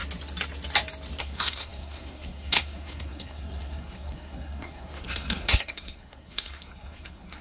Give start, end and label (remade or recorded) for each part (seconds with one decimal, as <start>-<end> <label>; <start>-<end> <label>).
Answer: 0.0-1.2 recorded; 1.2-7.4 remade